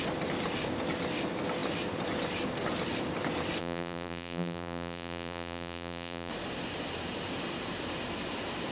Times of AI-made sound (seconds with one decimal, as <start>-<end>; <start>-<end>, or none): 3.6-6.3